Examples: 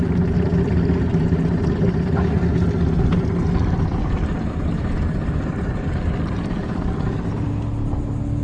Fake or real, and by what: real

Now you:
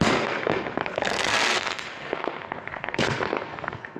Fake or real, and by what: fake, codec, SNAC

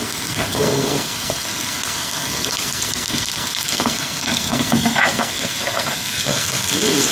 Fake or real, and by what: fake, codec, SNAC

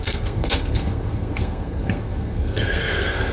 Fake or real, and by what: fake, codec, SNAC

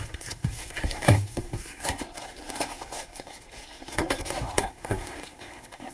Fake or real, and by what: fake, codec, SNAC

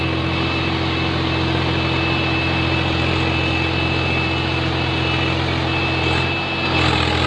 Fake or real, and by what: real